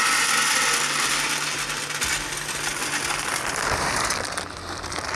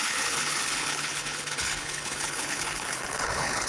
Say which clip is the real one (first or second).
first